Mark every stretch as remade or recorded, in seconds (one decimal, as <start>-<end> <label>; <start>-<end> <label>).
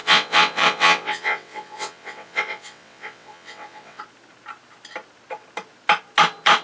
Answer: 0.0-4.0 remade; 4.0-6.6 recorded